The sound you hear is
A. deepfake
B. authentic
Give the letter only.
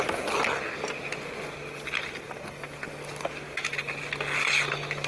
B